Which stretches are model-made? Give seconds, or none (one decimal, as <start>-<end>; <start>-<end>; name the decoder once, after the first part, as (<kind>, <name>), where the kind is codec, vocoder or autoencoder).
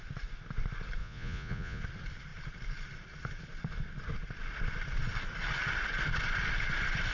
1.0-1.8 (vocoder, Vocos)